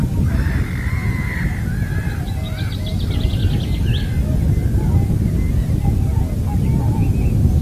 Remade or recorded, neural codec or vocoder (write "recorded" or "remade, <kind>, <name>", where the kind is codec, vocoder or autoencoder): recorded